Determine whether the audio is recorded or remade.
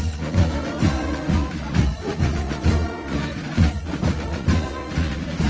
remade